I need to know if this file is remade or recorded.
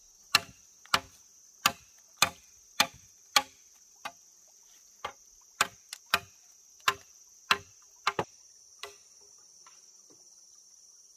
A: recorded